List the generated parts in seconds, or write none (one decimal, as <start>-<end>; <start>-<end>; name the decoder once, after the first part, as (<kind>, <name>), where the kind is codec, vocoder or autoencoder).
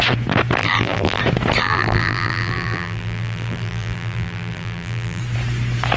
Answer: 0.6-1.2 (vocoder, BigVGAN v2); 1.6-5.2